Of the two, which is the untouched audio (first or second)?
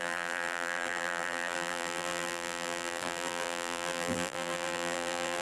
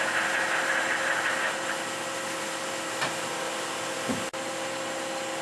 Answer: second